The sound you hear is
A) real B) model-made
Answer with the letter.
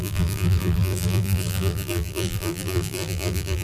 B